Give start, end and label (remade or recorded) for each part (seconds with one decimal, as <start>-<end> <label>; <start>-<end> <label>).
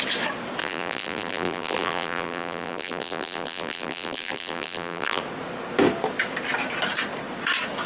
0.0-0.6 recorded; 0.6-5.2 remade; 5.2-7.9 recorded